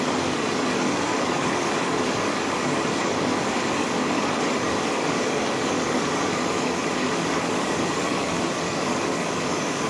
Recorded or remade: remade